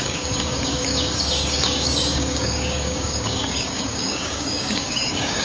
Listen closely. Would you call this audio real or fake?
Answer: fake